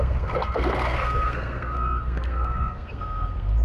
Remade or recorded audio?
remade